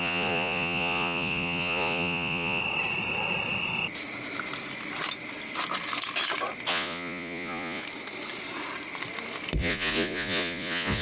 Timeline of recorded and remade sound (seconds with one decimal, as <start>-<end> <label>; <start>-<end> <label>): 0.0-2.6 remade; 2.6-6.7 recorded; 6.7-7.8 remade; 7.8-9.6 recorded; 9.6-11.0 remade